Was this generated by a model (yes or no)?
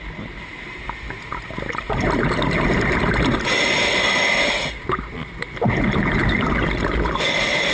no